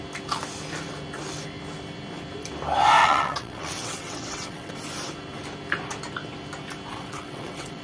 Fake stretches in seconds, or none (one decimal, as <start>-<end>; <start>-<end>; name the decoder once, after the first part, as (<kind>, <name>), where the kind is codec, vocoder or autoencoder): 3.0-4.7 (vocoder, WaveNeXt); 6.9-7.8